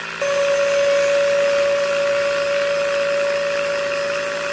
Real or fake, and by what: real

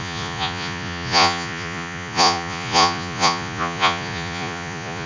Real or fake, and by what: fake, vocoder, Vocos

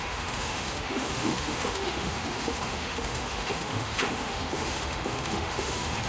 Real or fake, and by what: fake, autoencoder, DAC-VAE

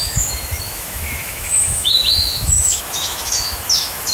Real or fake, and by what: fake, autoencoder, DAC-VAE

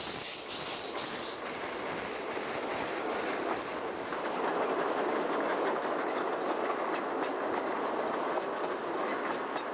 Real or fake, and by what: real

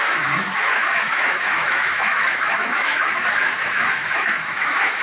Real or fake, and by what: fake, autoencoder, DAC-VAE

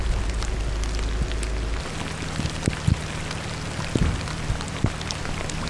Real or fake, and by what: real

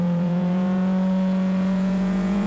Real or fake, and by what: fake, vocoder, Vocos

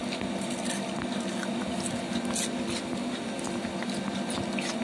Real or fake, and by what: real